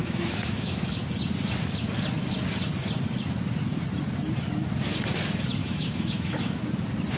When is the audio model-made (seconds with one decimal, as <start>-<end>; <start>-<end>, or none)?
0.0-1.0; 5.6-6.6